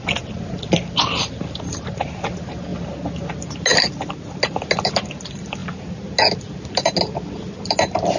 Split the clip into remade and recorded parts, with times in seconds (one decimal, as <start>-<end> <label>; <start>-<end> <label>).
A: 0.0-8.2 recorded